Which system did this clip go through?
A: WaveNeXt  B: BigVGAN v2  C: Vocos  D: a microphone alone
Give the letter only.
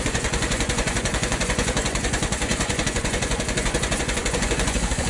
C